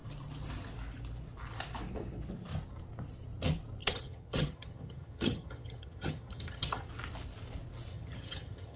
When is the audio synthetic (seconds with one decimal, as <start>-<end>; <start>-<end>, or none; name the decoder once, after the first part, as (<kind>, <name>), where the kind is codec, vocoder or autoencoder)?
3.8-6.9 (vocoder, HiFi-GAN); 7.9-8.8